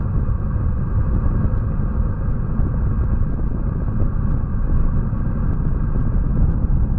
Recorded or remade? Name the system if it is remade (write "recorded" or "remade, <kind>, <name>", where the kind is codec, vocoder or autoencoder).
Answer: recorded